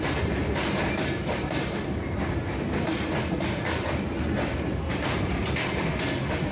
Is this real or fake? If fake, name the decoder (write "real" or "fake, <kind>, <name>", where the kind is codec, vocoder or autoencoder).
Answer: real